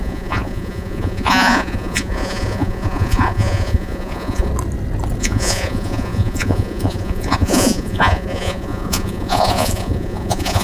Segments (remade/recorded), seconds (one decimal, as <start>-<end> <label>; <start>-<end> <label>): 0.0-4.5 remade; 4.5-5.2 recorded; 5.2-10.6 remade